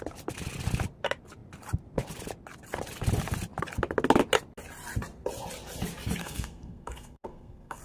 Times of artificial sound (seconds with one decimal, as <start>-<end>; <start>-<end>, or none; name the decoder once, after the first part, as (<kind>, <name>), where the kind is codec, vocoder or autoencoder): 6.2-7.8 (codec, SNAC)